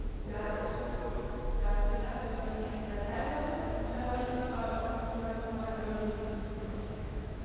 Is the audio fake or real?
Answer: fake